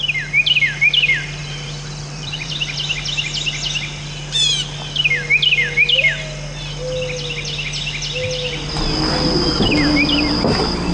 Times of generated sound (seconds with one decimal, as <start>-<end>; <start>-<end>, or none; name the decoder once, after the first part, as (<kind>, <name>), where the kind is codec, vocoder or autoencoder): 1.4-2.5 (vocoder, BigVGAN v2)